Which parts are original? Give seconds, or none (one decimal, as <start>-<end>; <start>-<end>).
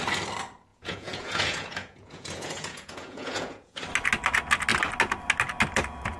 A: 0.0-0.7; 3.8-6.2